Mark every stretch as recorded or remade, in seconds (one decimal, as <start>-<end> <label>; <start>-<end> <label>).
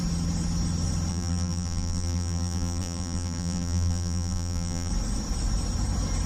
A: 0.0-1.1 recorded; 1.1-4.9 remade; 4.9-6.3 recorded